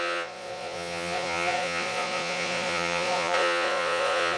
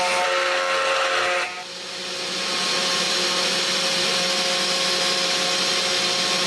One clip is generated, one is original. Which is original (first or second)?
second